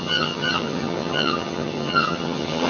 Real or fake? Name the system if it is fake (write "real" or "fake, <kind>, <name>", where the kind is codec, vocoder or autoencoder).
fake, vocoder, HiFi-GAN